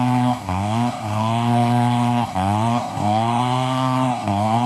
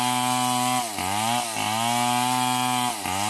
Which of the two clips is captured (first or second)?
second